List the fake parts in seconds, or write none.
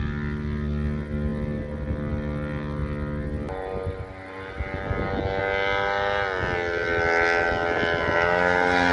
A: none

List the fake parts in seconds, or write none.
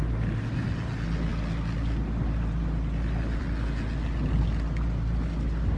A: none